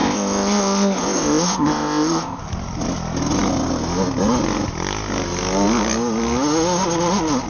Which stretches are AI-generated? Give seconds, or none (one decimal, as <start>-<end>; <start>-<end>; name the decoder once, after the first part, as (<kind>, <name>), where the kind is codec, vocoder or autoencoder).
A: 0.0-2.4 (codec, ZipCodec)